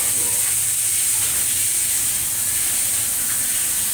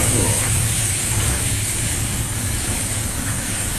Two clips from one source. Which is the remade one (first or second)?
second